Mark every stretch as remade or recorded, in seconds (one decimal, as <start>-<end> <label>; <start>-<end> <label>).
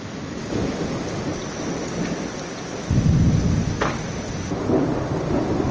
0.0-5.7 recorded